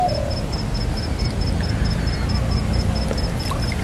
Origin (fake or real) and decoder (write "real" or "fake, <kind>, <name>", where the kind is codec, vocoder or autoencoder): real